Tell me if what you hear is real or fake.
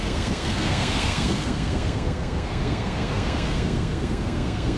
fake